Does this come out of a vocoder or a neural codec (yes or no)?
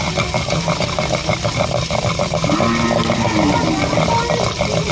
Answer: no